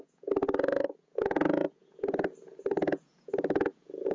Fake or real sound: fake